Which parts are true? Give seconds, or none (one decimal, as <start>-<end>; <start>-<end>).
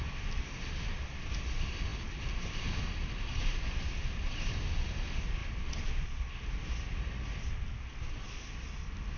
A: 0.0-9.2